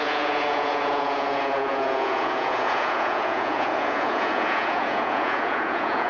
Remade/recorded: remade